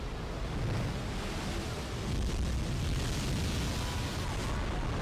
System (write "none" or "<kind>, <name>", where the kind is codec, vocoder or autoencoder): none